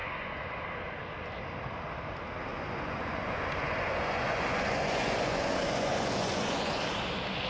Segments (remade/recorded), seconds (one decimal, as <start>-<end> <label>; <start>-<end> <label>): 0.0-0.6 remade; 0.6-2.5 recorded; 2.5-6.8 remade; 6.8-7.5 recorded